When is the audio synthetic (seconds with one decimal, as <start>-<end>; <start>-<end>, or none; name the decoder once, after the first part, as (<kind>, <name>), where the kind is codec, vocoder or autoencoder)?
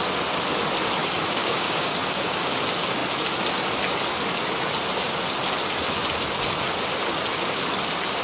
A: 1.0-2.4 (codec, DAC)